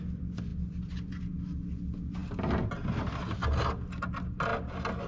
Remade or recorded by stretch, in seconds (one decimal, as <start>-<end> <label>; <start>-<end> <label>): 0.0-5.1 recorded